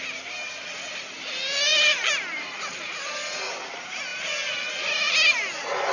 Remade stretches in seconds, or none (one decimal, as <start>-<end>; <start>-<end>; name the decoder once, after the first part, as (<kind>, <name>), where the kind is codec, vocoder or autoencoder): 1.7-3.1 (vocoder, BigVGAN v2)

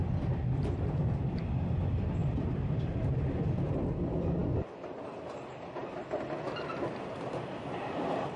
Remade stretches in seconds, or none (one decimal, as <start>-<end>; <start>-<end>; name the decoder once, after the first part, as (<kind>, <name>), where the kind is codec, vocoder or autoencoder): 2.2-3.1 (vocoder, BigVGAN v2)

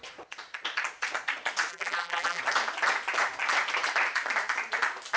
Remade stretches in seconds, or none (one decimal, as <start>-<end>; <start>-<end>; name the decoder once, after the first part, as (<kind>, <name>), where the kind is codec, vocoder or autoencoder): 1.7-2.4 (vocoder, BigVGAN v2)

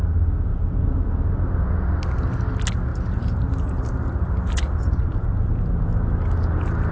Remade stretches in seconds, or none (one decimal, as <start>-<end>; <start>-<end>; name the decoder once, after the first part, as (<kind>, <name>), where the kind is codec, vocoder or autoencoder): 0.5-1.4 (vocoder, BigVGAN v2); 2.9-5.8

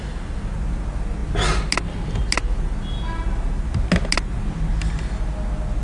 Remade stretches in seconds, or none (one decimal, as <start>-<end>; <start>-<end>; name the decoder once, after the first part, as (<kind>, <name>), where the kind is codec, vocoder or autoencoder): none

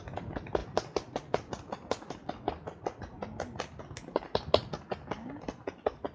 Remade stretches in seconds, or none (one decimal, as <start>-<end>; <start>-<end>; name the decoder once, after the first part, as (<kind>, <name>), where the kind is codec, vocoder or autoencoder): none

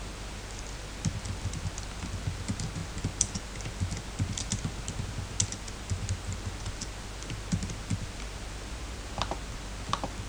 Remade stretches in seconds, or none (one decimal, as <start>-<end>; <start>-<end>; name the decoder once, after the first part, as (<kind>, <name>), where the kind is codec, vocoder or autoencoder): none